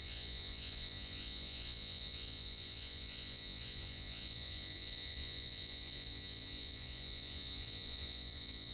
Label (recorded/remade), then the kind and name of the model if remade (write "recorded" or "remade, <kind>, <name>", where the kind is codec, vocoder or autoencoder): remade, vocoder, Vocos